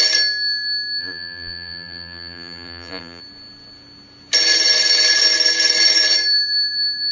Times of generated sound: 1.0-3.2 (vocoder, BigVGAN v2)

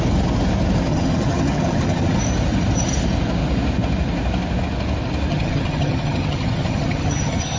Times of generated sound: 0.9-2.2 (vocoder, HiFi-GAN); 5.3-7.6

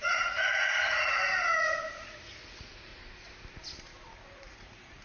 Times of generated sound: 0.0-2.9 (vocoder, Vocos); 4.2-5.0

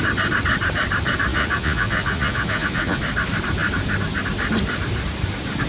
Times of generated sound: 1.3-3.0 (vocoder, Vocos)

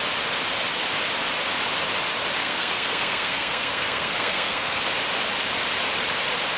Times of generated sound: 2.4-4.8 (codec, SNAC)

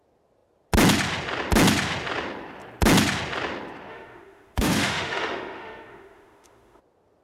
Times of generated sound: 3.9-6.8 (autoencoder, DAC-VAE)

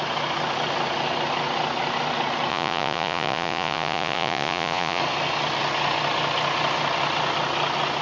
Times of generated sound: 2.5-5.0 (vocoder, Vocos)

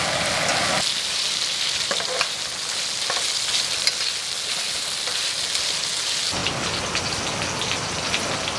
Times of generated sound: none